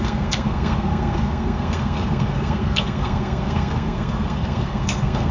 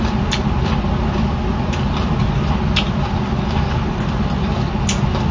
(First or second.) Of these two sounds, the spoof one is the first